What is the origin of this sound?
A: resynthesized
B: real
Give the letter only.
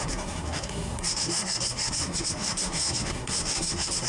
A